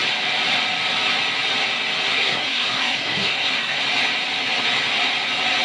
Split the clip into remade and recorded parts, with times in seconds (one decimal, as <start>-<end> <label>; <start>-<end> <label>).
0.0-2.1 recorded; 2.1-3.8 remade; 3.8-5.6 recorded